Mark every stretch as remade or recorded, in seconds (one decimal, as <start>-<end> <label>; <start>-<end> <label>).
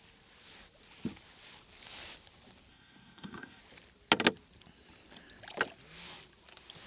0.0-2.7 recorded; 2.7-3.6 remade; 3.6-6.9 recorded